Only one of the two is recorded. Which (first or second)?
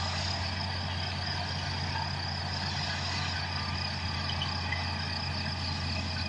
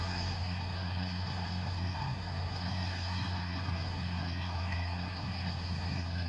first